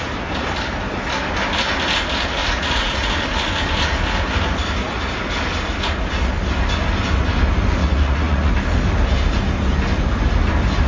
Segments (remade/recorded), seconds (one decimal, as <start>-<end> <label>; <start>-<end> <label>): 0.0-2.4 recorded; 2.4-3.1 remade; 3.1-7.8 recorded; 7.8-8.5 remade; 8.5-10.9 recorded